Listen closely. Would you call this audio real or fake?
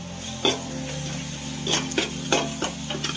real